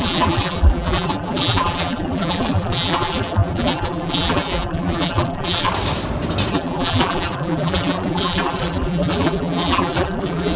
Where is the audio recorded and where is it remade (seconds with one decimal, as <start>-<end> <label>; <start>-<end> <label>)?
0.0-5.7 remade; 5.7-6.5 recorded; 6.5-10.6 remade